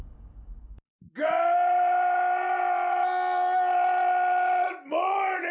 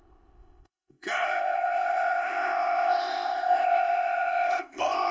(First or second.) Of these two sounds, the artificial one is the second